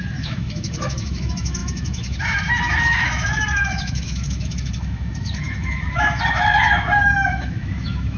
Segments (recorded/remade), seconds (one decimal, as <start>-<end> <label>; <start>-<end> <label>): 0.0-8.2 remade